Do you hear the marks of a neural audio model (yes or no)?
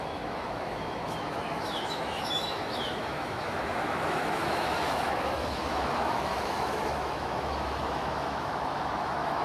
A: yes